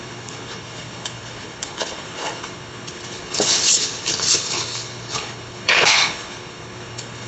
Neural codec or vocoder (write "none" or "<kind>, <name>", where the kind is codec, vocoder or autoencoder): codec, HILCodec